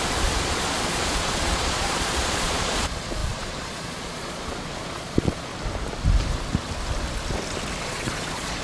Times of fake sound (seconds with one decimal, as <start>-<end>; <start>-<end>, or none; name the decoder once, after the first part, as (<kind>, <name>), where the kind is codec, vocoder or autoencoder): 0.0-5.5 (vocoder, Vocos); 7.8-8.6